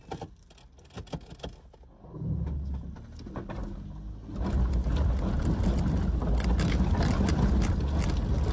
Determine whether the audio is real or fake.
real